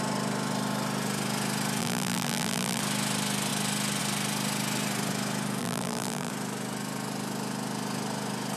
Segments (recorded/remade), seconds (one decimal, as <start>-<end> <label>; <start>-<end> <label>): 0.0-1.8 recorded; 1.8-2.8 remade; 2.8-5.6 recorded; 5.6-6.3 remade; 6.3-8.6 recorded